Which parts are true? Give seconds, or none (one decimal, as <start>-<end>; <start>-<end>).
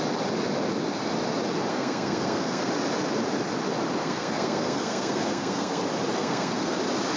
0.0-1.7; 2.7-4.0; 5.8-6.2; 6.8-7.2